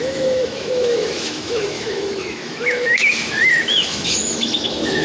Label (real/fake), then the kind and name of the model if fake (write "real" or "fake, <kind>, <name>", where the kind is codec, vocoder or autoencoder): fake, autoencoder, DAC-VAE